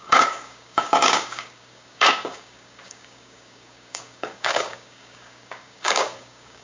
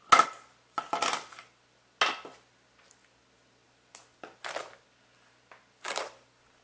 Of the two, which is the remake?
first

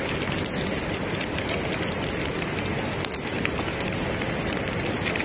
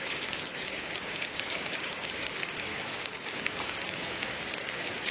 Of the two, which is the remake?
second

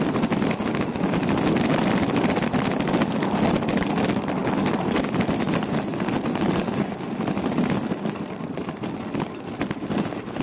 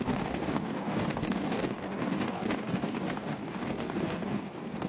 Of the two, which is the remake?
second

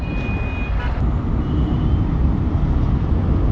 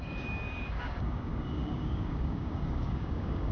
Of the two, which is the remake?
second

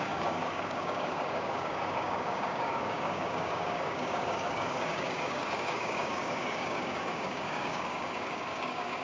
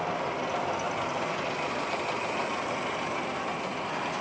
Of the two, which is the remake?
first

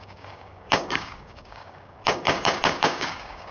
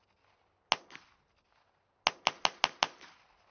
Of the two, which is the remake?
first